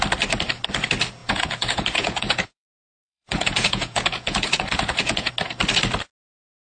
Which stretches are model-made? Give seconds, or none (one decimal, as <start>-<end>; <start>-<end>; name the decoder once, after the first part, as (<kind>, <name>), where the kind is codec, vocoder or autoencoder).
1.2-5.3 (vocoder, Vocos)